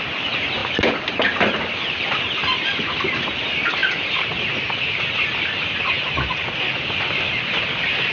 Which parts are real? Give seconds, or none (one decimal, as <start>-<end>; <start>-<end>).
0.0-8.1